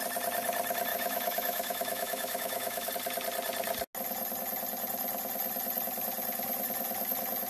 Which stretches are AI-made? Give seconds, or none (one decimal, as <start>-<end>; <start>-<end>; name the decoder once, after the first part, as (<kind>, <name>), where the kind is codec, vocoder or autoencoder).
0.9-2.9 (autoencoder, DAC-VAE)